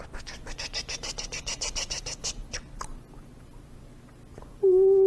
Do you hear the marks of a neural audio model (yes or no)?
no